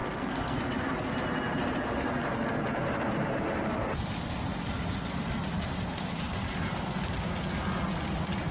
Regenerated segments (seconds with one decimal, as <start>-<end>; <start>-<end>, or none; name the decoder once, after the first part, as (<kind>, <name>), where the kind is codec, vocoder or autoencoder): 0.0-0.6 (codec, SNAC)